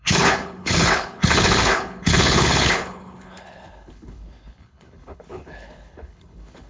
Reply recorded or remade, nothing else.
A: remade